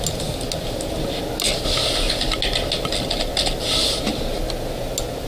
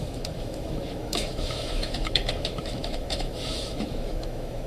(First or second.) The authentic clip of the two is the first